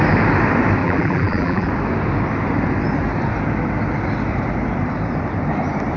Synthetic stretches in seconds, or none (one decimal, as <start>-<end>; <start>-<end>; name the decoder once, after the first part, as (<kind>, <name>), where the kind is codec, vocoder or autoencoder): 0.8-1.7 (vocoder, BigVGAN v2)